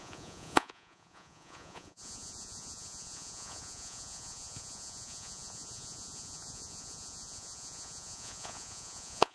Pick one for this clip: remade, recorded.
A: remade